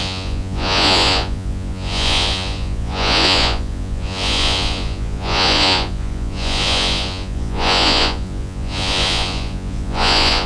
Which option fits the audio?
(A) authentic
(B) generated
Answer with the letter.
B